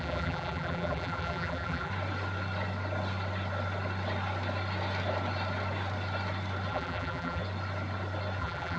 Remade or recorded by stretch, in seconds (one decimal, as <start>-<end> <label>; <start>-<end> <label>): 0.0-1.9 remade; 1.9-6.7 recorded; 6.7-7.4 remade; 7.4-8.4 recorded; 8.4-8.8 remade